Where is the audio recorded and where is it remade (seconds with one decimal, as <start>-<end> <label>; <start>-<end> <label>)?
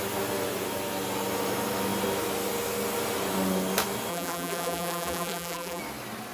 0.0-4.1 recorded; 4.1-5.8 remade; 5.8-6.3 recorded